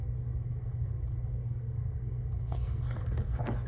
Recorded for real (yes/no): no